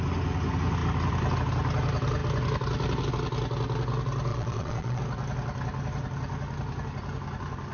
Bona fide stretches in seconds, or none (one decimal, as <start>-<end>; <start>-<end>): 0.0-4.3; 5.0-7.7